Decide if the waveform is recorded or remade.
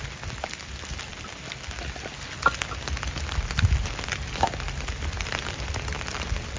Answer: recorded